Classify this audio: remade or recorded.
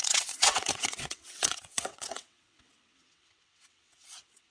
remade